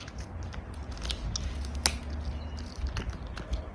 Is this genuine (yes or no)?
yes